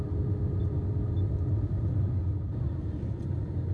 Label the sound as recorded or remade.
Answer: recorded